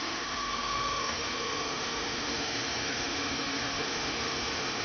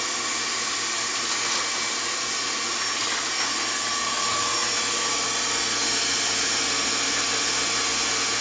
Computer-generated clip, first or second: first